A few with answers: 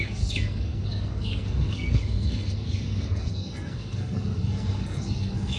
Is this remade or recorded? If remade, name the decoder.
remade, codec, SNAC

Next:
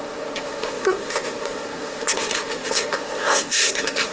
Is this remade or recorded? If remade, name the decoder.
remade, codec, SNAC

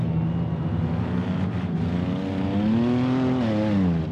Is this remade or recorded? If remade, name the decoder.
recorded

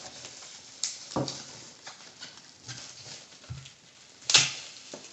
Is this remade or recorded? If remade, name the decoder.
recorded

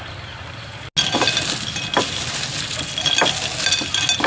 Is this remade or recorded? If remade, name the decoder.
recorded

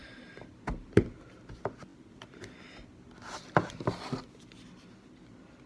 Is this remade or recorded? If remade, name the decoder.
recorded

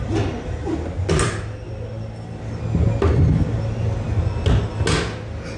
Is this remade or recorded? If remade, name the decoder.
recorded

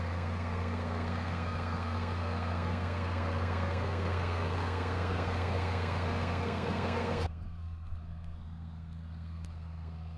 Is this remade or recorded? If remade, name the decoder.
remade, codec, SNAC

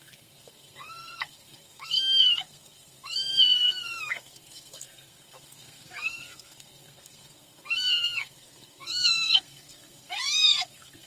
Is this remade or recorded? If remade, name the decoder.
remade, codec, SNAC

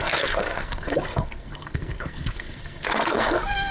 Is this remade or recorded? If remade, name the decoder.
remade, codec, SNAC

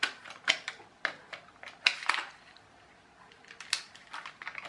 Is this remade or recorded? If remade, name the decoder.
recorded